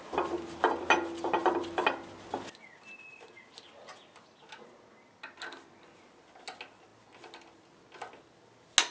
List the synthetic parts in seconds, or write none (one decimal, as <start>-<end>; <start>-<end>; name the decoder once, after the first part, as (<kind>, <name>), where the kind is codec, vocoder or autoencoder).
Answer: none